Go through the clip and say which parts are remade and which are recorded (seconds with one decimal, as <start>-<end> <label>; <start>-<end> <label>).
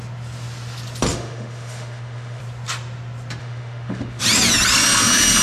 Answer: 0.0-1.1 recorded; 1.1-2.4 remade; 2.4-3.4 recorded; 3.4-4.2 remade; 4.2-5.4 recorded